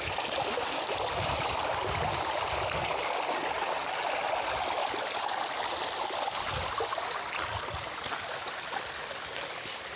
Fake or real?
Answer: real